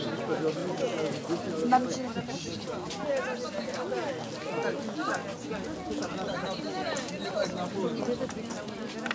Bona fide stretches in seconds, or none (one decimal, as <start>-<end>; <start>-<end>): 0.0-9.1